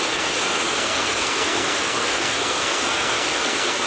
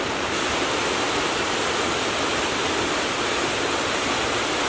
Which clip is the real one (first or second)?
second